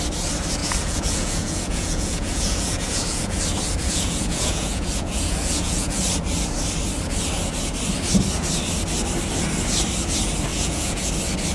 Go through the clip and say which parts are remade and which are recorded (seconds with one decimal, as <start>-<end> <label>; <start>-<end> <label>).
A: 0.0-0.6 recorded; 0.6-3.4 remade; 3.4-3.8 recorded; 3.8-6.0 remade; 6.0-10.5 recorded; 10.5-11.1 remade; 11.1-11.5 recorded